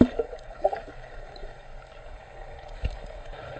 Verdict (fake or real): fake